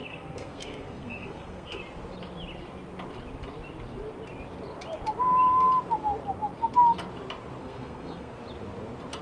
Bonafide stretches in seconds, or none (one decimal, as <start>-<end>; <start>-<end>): 1.8-7.6; 8.3-9.2